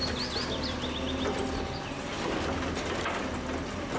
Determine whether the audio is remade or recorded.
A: recorded